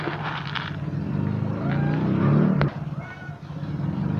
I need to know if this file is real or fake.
real